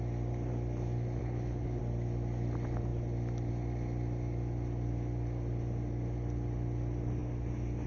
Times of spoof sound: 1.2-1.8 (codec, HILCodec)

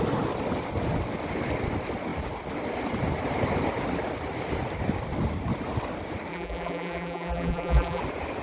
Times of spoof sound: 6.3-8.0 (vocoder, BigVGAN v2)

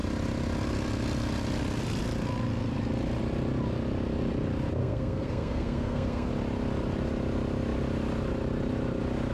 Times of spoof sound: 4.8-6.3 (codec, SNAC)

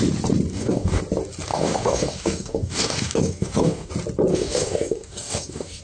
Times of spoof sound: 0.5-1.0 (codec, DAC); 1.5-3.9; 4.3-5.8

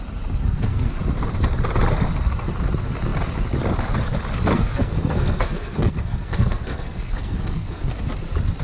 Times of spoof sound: 0.4-1.0 (codec, SNAC); 4.5-7.9